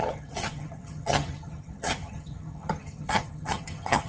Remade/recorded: remade